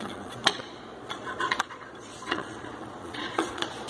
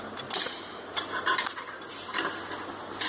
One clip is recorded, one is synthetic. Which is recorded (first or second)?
second